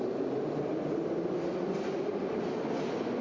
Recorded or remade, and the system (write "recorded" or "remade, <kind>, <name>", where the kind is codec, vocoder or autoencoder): recorded